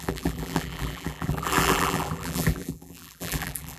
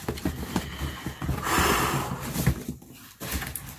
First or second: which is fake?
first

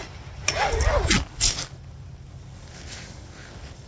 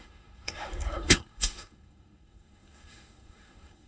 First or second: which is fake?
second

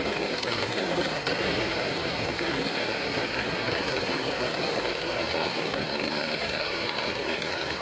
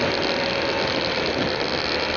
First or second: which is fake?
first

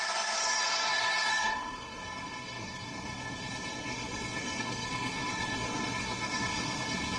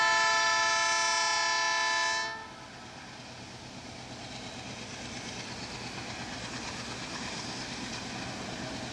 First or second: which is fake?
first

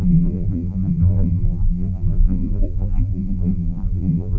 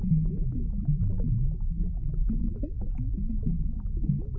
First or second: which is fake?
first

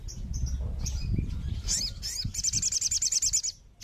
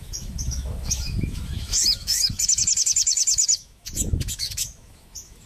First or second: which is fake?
second